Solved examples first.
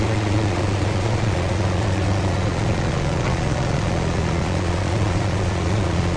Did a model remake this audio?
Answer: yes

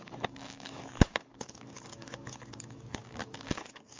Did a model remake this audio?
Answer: yes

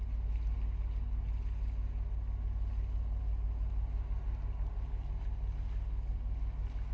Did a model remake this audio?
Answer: no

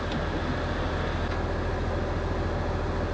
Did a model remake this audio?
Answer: no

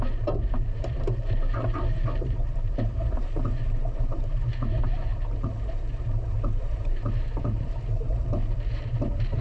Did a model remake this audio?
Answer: yes